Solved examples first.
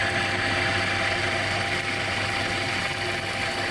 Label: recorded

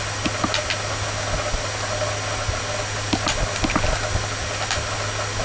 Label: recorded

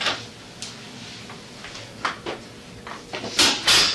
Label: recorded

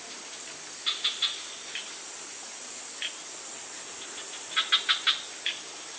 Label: recorded